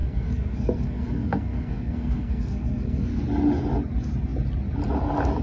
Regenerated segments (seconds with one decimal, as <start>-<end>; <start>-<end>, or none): 0.0-3.2